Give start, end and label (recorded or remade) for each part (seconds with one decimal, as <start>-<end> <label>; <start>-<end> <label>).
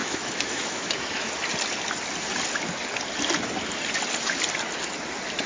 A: 0.0-1.3 remade; 1.3-5.5 recorded